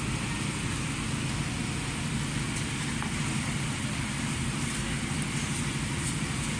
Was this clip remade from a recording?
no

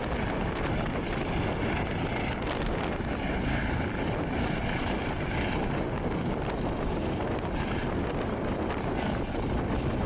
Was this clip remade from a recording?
no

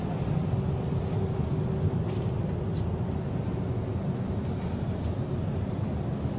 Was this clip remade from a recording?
no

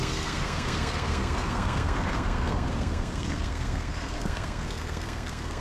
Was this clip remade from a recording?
yes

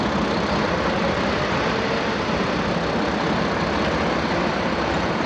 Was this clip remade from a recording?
no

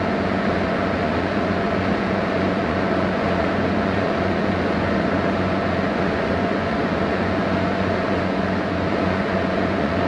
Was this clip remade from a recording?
yes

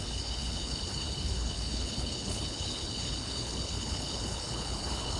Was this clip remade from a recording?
yes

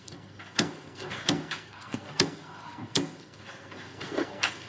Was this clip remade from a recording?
yes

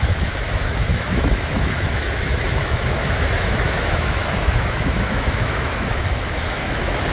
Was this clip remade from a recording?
yes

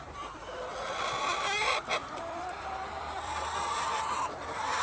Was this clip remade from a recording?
yes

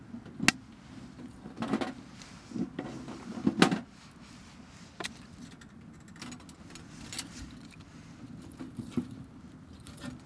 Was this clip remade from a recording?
no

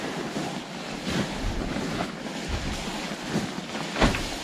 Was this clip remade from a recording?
no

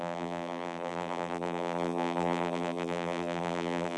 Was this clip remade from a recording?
yes